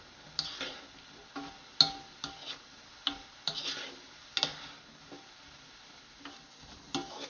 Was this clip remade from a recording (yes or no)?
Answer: no